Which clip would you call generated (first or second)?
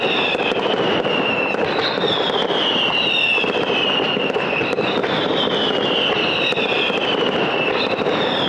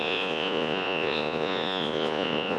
second